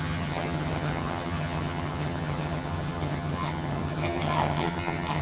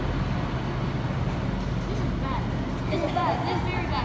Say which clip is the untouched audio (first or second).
second